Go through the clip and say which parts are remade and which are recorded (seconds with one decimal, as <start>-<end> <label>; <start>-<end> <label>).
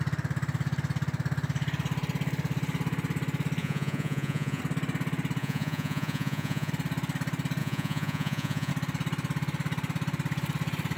0.0-3.6 recorded; 3.6-4.6 remade; 4.6-5.4 recorded; 5.4-6.7 remade; 6.7-7.6 recorded; 7.6-8.7 remade; 8.7-11.0 recorded